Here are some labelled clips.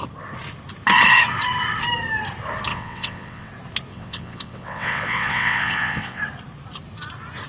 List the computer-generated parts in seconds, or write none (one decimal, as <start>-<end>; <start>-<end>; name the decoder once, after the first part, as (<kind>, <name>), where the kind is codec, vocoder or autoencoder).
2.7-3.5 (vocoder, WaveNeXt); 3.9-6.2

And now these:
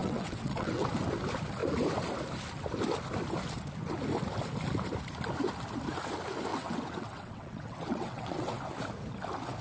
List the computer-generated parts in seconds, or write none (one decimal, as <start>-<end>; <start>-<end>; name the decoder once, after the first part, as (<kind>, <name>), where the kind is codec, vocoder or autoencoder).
0.0-0.9 (vocoder, WaveNeXt); 6.5-8.6

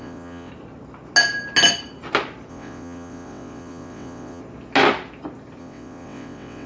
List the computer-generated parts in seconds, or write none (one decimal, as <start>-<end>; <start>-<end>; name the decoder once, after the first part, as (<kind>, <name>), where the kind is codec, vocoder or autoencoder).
0.0-0.5 (vocoder, WaveNeXt); 2.5-4.4; 5.6-6.7